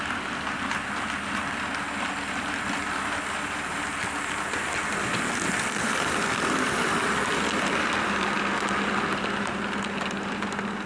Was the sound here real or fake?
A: real